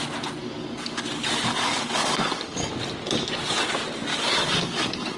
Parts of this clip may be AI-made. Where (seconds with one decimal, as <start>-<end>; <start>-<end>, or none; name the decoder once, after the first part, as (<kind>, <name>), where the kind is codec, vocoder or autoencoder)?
0.4-1.0 (codec, DAC); 1.5-2.7; 4.1-5.2